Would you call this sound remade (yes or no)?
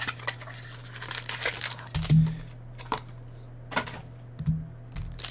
no